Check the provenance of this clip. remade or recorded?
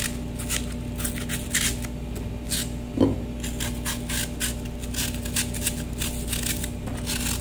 recorded